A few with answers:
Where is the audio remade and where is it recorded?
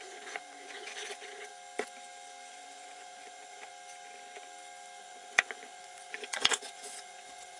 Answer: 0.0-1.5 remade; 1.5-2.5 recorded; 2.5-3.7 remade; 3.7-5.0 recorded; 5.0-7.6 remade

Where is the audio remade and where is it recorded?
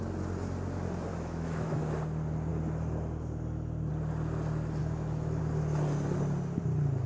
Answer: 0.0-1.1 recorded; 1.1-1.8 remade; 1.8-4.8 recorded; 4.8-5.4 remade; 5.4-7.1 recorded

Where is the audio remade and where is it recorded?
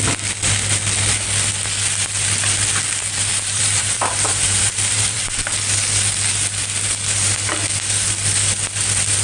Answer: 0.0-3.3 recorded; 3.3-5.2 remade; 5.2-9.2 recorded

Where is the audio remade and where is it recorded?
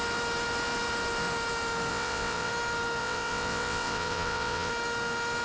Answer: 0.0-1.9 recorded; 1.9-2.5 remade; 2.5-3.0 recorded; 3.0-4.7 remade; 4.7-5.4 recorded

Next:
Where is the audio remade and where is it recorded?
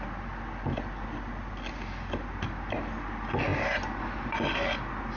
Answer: 0.0-5.2 recorded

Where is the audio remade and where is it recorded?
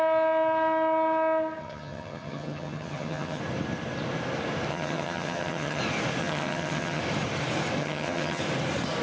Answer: 0.0-1.6 recorded; 1.6-3.4 remade; 3.4-4.7 recorded; 4.7-5.8 remade; 5.8-6.2 recorded; 6.2-7.0 remade; 7.0-7.8 recorded; 7.8-8.4 remade; 8.4-9.0 recorded